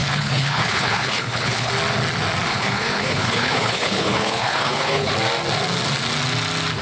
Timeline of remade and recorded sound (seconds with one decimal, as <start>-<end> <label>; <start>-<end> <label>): 0.0-1.7 remade; 1.7-2.5 recorded; 2.5-5.1 remade; 5.1-6.8 recorded